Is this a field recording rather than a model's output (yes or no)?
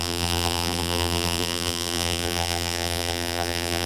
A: no